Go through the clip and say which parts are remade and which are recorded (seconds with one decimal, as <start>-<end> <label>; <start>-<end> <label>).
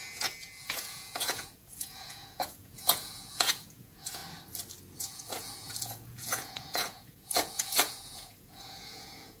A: 0.0-4.2 remade; 4.2-5.0 recorded; 5.0-9.4 remade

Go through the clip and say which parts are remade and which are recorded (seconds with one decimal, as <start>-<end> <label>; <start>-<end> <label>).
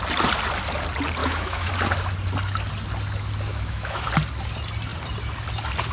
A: 0.0-1.2 recorded; 1.2-1.7 remade; 1.7-3.5 recorded; 3.5-4.1 remade; 4.1-5.9 recorded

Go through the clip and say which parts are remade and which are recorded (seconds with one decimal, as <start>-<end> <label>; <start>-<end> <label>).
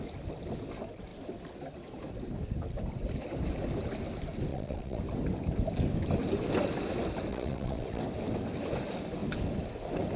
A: 0.0-4.5 recorded; 4.5-5.0 remade; 5.0-7.3 recorded; 7.3-8.0 remade; 8.0-10.2 recorded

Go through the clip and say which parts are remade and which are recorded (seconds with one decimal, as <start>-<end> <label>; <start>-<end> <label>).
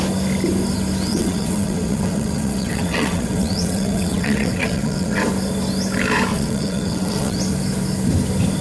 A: 0.0-1.1 recorded; 1.1-5.2 remade; 5.2-6.3 recorded; 6.3-7.4 remade; 7.4-8.6 recorded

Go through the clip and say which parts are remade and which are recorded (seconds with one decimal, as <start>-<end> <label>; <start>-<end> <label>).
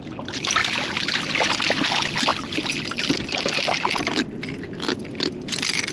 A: 0.0-5.9 recorded